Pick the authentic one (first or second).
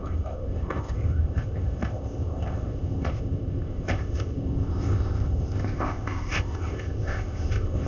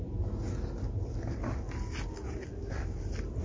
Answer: second